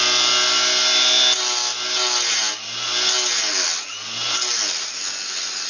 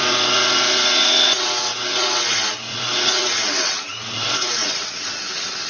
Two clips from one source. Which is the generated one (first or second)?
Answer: second